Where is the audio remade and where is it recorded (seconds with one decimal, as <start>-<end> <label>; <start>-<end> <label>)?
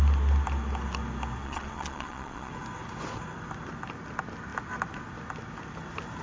0.0-1.4 recorded; 1.4-2.5 remade; 2.5-6.2 recorded